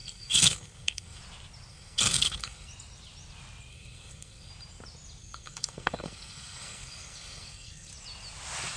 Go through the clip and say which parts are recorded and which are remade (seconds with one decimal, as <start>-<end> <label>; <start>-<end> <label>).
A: 0.0-1.2 remade; 1.2-1.7 recorded; 1.7-2.7 remade; 2.7-3.7 recorded; 3.7-4.5 remade; 4.5-5.2 recorded; 5.2-7.9 remade; 7.9-8.8 recorded